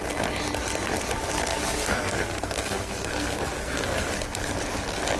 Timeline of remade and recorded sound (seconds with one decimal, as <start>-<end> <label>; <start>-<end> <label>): 0.0-1.5 recorded; 1.5-4.1 remade; 4.1-5.2 recorded